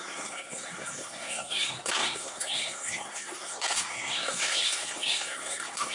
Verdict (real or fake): fake